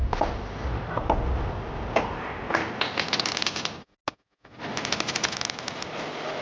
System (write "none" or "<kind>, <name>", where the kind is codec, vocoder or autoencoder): none